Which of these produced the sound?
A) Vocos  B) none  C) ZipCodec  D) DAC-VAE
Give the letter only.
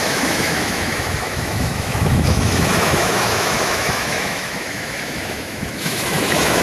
D